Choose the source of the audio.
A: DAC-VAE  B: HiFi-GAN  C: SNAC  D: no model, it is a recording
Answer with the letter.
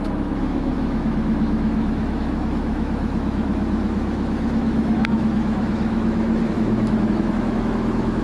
A